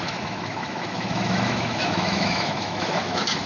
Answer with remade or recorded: remade